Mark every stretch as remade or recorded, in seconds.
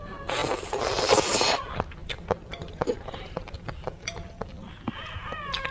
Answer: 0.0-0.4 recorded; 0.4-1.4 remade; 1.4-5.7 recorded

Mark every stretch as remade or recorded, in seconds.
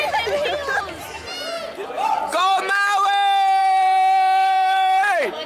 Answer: 0.0-0.6 recorded; 0.6-2.7 remade; 2.7-3.6 recorded; 3.6-5.5 remade